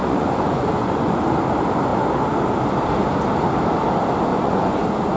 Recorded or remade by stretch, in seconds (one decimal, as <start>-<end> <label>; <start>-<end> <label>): 0.0-1.2 remade; 1.2-4.3 recorded; 4.3-4.8 remade; 4.8-5.2 recorded